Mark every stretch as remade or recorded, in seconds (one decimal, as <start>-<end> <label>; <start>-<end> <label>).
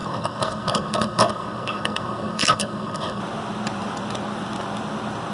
0.0-3.2 remade; 3.2-5.3 recorded